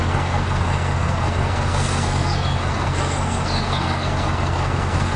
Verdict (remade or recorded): remade